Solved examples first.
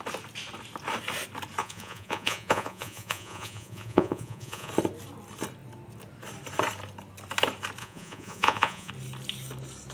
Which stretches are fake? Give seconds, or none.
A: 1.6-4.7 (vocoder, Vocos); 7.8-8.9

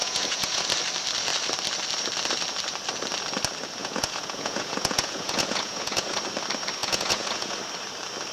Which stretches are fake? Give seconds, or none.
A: 0.0-0.6 (vocoder, Vocos); 3.8-6.2; 6.8-7.6